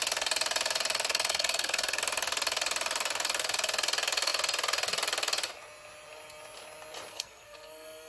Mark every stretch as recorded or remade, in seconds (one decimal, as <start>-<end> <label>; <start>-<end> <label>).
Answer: 0.0-1.1 recorded; 1.1-2.0 remade; 2.0-7.1 recorded; 7.1-8.1 remade